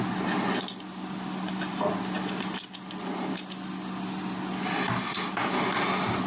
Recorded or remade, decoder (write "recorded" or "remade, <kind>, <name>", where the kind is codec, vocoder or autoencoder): recorded